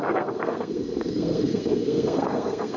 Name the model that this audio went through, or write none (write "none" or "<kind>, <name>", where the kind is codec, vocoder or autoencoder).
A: codec, SNAC